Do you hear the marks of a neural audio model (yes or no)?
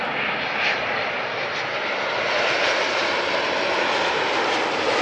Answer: no